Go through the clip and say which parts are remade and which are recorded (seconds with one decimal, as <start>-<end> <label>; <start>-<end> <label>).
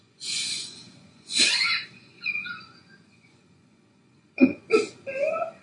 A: 0.0-5.6 remade